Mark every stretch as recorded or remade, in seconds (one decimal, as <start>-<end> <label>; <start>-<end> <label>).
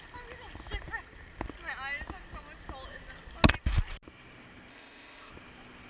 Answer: 0.0-4.7 recorded; 4.7-5.3 remade; 5.3-5.9 recorded